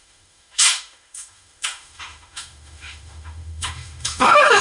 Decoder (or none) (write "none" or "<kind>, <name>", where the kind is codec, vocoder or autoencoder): autoencoder, DAC-VAE